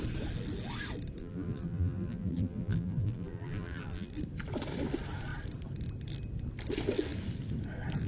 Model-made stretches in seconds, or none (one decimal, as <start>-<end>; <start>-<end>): 1.2-4.1